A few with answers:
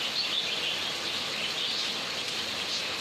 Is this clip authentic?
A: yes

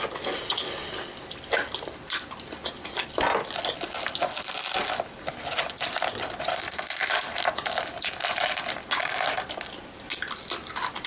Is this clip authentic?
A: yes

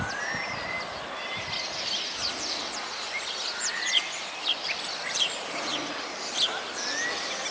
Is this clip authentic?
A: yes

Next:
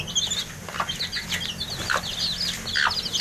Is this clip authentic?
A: yes